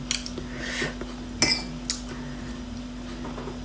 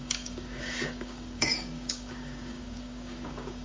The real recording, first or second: first